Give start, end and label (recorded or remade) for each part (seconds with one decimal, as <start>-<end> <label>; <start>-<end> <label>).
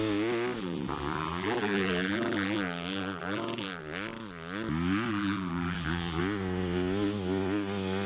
0.0-0.6 recorded; 0.6-3.8 remade; 3.8-5.1 recorded; 5.1-6.2 remade; 6.2-8.1 recorded